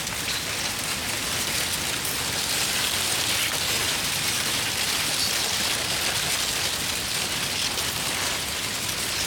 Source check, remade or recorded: recorded